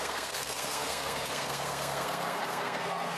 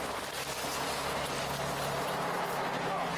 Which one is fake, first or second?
first